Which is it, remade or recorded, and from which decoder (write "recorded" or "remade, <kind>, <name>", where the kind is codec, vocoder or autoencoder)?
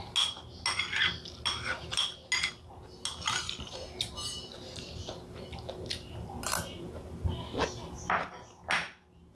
recorded